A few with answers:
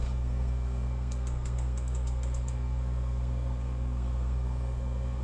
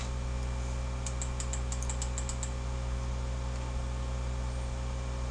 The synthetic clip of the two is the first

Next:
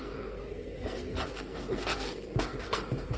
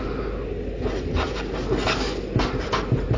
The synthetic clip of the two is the first